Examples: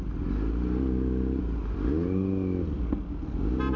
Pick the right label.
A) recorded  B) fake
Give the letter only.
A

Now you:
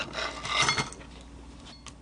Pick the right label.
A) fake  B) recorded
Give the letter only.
B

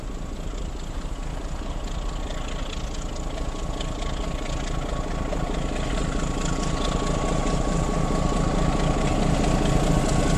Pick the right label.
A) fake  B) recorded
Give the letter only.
B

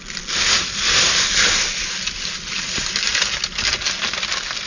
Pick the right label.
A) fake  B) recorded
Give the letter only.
B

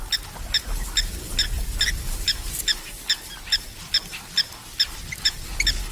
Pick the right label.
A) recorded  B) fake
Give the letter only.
A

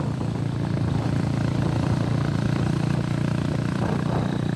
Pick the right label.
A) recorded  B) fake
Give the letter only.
B